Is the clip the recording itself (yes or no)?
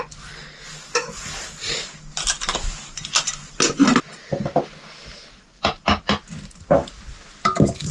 yes